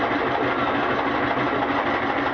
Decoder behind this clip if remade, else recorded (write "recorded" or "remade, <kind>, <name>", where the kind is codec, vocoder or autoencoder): recorded